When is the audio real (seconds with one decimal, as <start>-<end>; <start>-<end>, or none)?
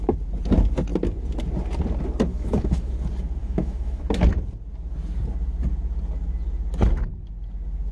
0.0-2.3; 2.9-3.4; 4.0-7.9